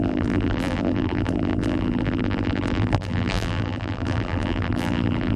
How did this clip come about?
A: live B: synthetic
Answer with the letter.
B